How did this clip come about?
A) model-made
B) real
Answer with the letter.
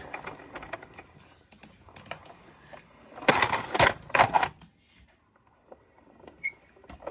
B